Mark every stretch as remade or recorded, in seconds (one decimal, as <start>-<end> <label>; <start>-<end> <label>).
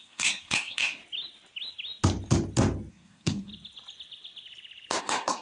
0.0-1.0 remade; 1.0-2.9 recorded; 2.9-3.5 remade; 3.5-5.0 recorded; 5.0-5.4 remade